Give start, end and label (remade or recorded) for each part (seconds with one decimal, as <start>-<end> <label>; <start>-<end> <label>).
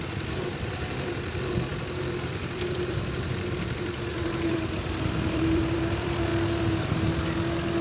0.0-6.3 remade; 6.3-7.2 recorded; 7.2-7.8 remade